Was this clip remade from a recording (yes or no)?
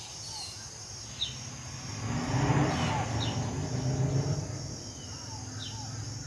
no